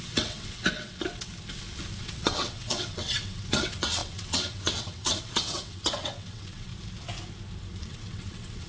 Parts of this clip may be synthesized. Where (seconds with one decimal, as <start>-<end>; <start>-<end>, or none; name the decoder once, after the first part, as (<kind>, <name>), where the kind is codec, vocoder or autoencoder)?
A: 0.0-1.3 (vocoder, WaveNeXt); 2.0-6.7; 7.8-8.7